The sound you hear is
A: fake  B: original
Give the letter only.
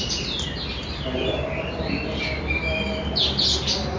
B